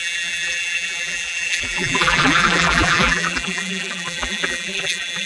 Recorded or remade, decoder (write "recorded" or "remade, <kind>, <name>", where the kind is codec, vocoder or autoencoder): remade, vocoder, BigVGAN v2